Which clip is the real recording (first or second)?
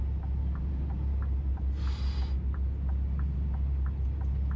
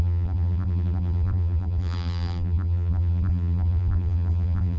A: first